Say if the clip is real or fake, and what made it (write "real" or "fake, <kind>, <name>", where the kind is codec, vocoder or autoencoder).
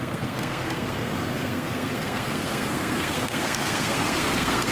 fake, codec, SNAC